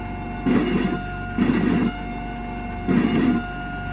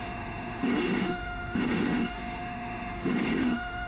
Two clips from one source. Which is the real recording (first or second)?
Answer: first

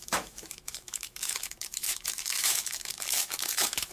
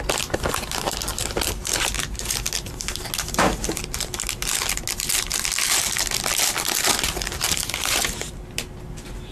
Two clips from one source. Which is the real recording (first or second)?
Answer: second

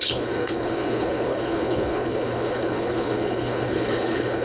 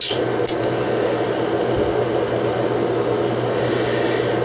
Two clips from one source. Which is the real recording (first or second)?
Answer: second